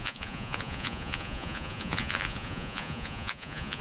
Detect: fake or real fake